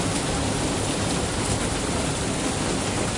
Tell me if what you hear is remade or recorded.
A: recorded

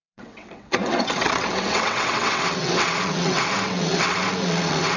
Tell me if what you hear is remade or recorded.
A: remade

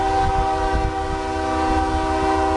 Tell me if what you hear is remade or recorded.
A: recorded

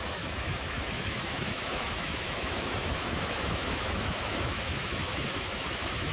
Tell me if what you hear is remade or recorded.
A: remade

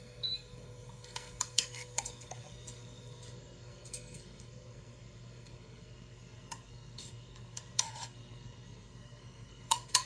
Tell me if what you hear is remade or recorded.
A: remade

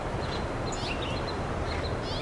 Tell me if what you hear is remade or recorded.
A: recorded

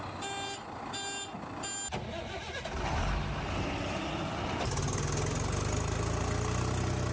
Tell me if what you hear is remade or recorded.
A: recorded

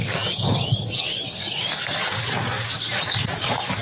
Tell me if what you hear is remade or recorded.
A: remade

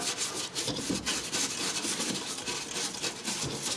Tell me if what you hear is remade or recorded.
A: recorded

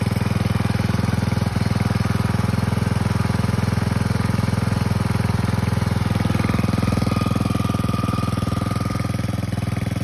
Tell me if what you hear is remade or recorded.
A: recorded